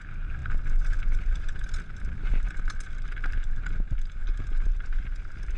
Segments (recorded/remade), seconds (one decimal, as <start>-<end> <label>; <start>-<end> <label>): 0.0-5.6 recorded